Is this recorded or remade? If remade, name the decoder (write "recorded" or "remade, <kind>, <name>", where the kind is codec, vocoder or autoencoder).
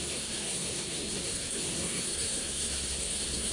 remade, codec, SNAC